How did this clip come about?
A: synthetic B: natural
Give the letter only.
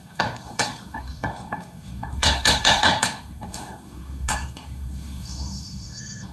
A